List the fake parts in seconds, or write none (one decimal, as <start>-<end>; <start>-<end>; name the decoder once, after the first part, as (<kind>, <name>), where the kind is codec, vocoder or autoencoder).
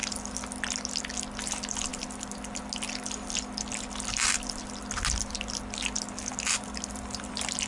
none